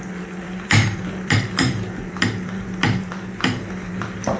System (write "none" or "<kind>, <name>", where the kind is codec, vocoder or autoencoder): vocoder, BigVGAN v2